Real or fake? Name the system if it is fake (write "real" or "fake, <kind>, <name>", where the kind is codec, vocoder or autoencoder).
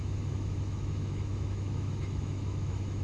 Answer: fake, autoencoder, DAC-VAE